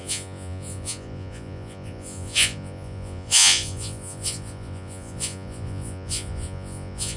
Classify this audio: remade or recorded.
remade